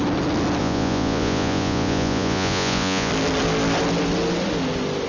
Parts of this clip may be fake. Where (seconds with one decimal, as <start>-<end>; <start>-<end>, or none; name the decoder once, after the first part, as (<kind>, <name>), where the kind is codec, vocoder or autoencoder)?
0.6-3.1 (vocoder, Vocos)